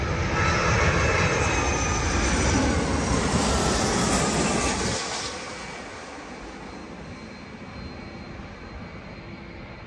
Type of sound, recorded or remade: recorded